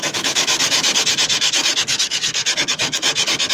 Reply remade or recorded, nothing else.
remade